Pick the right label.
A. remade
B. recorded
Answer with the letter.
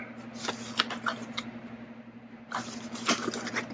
B